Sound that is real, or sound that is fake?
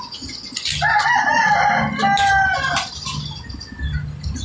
real